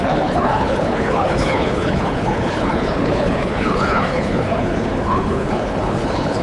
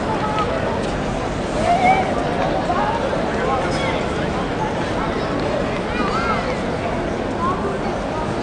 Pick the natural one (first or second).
second